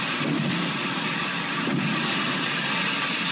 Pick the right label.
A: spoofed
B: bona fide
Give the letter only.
B